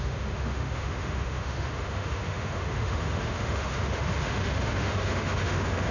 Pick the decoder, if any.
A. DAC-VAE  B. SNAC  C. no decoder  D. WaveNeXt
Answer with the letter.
A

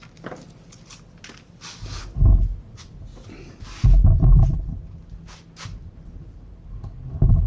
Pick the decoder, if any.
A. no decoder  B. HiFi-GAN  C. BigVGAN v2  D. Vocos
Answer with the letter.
A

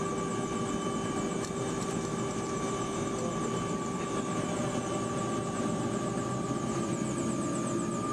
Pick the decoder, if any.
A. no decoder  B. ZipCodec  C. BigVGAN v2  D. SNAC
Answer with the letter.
A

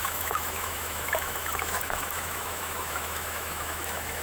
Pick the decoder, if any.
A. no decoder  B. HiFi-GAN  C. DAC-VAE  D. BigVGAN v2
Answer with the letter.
C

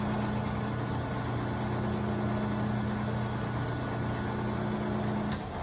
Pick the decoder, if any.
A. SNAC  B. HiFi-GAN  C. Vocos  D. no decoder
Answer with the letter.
D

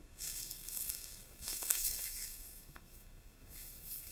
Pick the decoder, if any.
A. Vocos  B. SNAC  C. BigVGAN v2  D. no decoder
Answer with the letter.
B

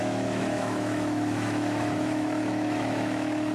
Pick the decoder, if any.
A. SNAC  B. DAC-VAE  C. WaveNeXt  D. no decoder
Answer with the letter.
B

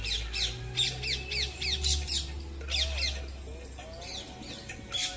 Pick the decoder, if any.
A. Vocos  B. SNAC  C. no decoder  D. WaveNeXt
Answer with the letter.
C